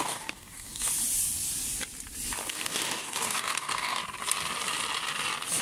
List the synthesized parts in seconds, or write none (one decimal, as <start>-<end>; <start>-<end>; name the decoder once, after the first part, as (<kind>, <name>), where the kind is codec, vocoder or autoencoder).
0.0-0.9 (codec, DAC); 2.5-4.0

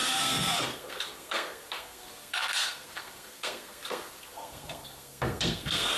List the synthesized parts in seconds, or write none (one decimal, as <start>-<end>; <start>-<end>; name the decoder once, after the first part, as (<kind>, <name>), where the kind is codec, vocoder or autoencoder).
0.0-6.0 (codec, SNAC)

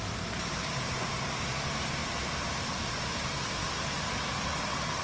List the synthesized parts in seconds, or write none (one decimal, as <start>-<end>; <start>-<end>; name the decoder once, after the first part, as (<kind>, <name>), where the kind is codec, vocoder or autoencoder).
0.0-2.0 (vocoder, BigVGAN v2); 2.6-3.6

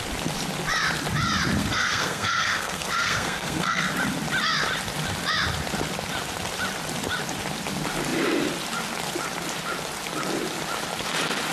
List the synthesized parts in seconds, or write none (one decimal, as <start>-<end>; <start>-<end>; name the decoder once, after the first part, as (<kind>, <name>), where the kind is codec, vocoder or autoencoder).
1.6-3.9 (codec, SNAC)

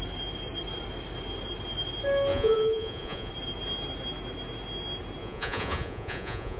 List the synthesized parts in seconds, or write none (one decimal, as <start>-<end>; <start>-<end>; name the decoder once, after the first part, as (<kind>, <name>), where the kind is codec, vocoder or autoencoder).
2.3-3.3 (vocoder, Vocos); 5.2-6.6

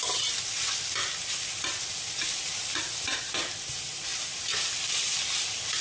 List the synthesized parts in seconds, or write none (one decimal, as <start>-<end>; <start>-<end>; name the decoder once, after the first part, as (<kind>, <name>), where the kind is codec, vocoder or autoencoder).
none

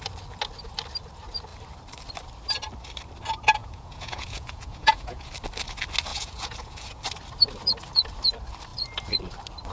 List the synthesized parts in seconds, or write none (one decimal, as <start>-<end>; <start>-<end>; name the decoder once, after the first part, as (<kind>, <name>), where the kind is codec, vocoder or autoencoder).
3.6-5.3 (vocoder, Vocos); 6.1-7.0